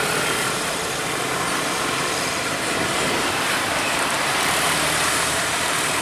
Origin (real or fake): fake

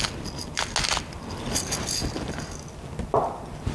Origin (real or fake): real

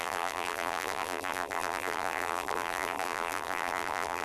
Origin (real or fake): fake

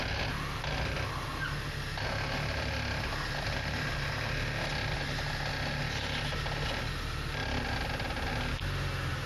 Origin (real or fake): real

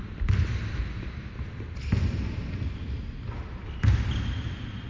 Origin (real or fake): real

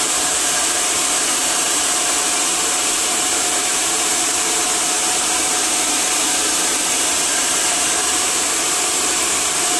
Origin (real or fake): fake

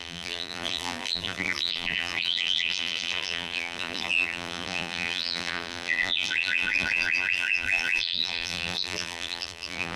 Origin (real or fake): fake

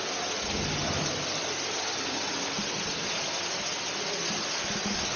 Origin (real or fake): real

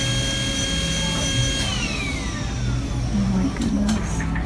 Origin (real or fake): real